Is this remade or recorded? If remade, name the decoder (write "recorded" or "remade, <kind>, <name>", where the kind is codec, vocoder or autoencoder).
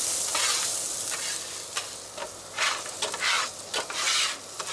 recorded